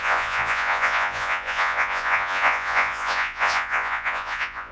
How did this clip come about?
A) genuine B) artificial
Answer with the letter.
B